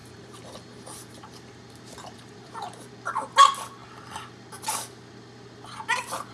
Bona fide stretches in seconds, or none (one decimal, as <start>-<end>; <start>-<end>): 2.9-6.3